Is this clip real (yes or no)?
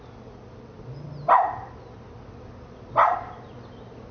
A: yes